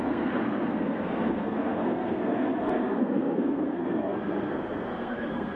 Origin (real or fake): fake